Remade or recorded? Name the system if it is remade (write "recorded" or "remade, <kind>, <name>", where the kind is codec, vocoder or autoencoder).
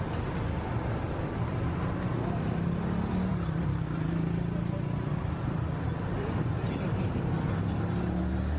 recorded